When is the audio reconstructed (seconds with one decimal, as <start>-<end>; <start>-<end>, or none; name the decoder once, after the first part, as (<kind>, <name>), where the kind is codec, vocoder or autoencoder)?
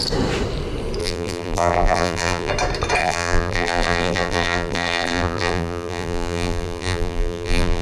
1.0-2.5 (vocoder, BigVGAN v2); 3.0-7.8